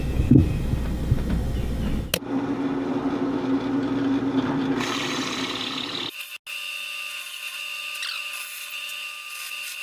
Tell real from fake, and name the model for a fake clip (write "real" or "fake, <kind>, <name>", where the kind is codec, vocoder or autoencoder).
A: real